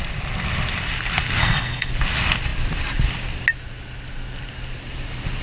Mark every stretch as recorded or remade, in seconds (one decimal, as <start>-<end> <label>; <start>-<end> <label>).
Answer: 0.0-1.4 recorded; 1.4-1.9 remade; 1.9-5.4 recorded